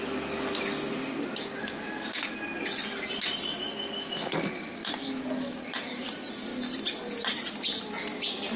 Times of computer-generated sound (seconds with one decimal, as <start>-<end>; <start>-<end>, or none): none